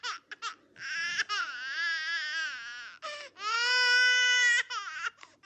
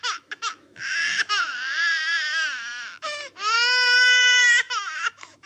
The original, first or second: first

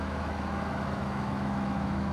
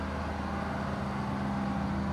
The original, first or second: second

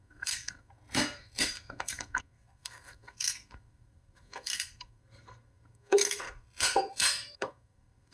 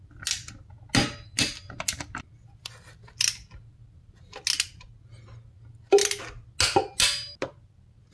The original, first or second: second